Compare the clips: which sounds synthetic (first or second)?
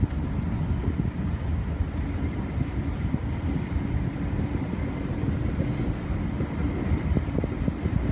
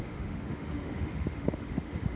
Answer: second